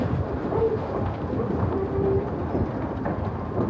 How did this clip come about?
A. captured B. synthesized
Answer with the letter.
A